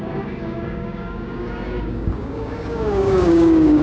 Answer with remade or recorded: remade